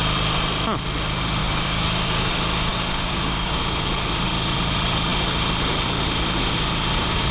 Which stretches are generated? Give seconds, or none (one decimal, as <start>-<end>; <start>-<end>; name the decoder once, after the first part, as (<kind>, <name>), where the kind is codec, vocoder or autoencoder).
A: 1.4-2.3 (codec, DAC); 2.7-3.6